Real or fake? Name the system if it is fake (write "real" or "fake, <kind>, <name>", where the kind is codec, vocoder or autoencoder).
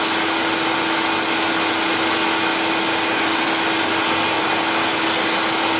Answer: real